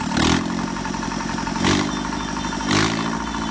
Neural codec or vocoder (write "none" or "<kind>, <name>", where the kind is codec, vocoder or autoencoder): none